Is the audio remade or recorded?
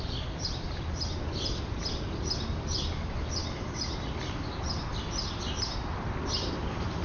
recorded